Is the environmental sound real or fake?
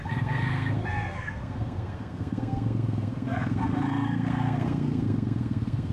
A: fake